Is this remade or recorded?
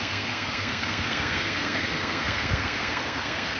remade